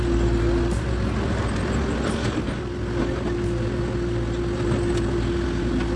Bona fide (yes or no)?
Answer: yes